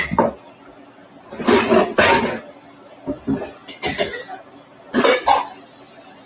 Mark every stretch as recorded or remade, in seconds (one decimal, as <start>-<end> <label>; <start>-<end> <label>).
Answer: 0.0-6.3 recorded